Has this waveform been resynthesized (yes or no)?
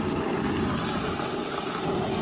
no